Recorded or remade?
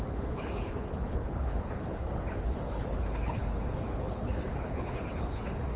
remade